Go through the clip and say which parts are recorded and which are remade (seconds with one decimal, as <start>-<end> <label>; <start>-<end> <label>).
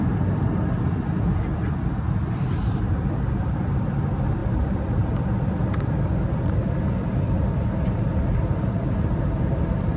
0.0-10.0 recorded